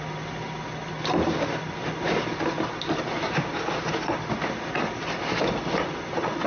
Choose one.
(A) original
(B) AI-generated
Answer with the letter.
A